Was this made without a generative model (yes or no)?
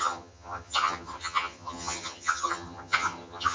no